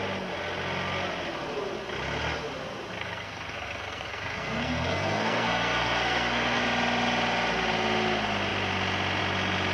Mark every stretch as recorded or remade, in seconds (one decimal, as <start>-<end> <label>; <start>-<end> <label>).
0.0-3.0 recorded; 3.0-6.6 remade; 6.6-9.7 recorded